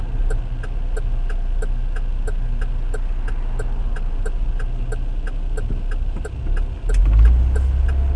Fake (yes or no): no